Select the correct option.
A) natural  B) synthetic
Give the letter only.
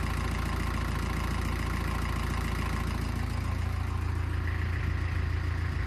A